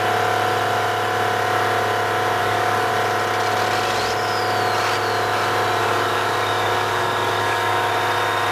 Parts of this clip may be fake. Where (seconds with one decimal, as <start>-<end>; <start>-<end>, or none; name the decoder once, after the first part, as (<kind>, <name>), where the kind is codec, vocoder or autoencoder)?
2.4-2.9 (codec, DAC); 5.8-7.9